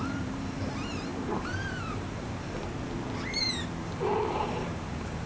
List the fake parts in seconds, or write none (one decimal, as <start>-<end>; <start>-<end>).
0.0-2.6; 3.8-5.3